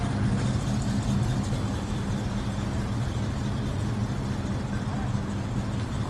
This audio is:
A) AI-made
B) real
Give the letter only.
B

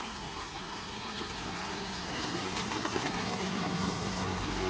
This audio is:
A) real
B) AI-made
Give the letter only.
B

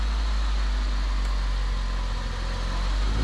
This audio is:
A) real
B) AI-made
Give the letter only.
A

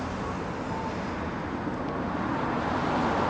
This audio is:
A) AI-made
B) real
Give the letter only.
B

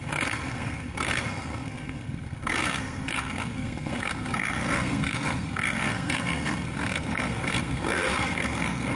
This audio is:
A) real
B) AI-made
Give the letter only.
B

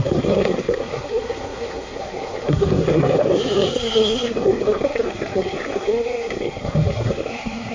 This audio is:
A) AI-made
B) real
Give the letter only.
A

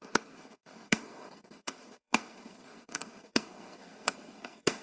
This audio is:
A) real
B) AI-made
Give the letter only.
B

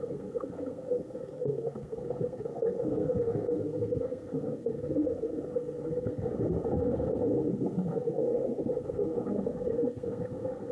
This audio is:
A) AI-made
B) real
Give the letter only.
A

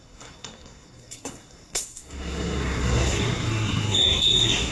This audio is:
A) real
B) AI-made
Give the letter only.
B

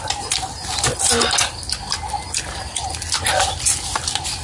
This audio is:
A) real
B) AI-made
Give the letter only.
A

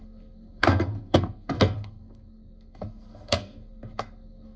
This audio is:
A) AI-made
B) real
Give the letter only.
A